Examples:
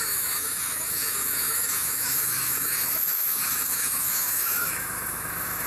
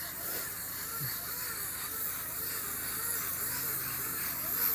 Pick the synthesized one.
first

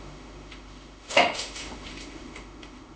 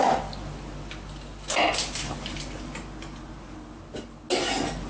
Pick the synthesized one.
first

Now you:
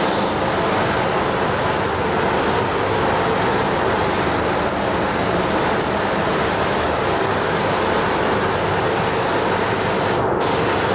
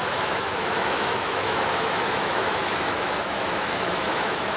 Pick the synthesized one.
second